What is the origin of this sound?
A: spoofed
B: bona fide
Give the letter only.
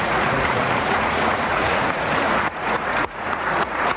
A